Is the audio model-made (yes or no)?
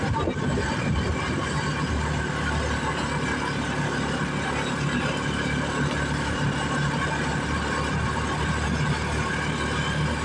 no